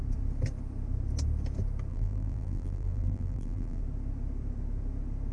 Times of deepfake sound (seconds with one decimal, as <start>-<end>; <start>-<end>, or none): 1.9-3.8